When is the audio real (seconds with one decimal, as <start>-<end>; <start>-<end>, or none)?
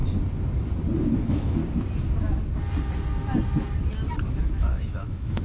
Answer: 0.0-1.2; 1.6-4.4